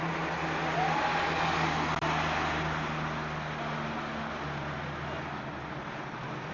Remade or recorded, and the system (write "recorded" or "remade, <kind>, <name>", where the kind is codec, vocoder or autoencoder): recorded